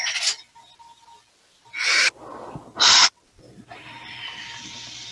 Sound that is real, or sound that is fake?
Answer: real